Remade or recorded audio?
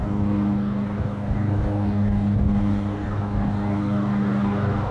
remade